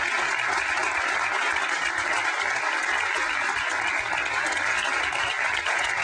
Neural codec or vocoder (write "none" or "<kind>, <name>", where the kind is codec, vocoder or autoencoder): none